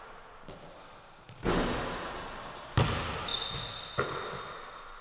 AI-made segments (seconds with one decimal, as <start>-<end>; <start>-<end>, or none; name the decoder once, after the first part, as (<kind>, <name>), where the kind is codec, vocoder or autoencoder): none